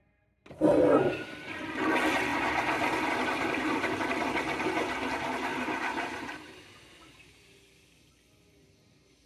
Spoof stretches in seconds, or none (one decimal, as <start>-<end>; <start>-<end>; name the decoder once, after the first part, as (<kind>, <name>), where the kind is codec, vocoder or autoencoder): 5.5-6.6 (vocoder, BigVGAN v2)

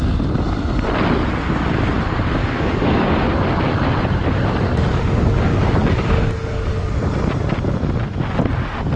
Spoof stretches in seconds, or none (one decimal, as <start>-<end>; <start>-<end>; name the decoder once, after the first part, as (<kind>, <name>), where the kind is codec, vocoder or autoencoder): 2.4-3.2 (codec, DAC); 5.5-6.9